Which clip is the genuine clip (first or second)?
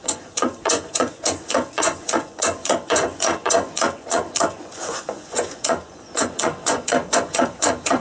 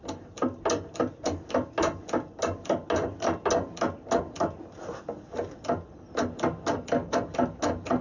second